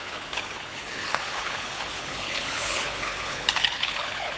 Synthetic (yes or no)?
yes